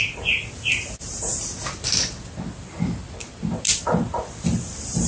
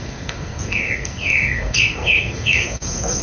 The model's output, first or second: second